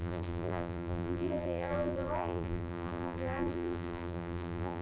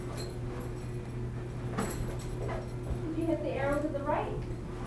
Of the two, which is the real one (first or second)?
second